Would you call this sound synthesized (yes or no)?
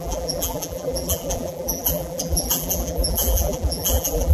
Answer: yes